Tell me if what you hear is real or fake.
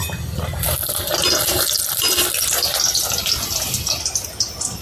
real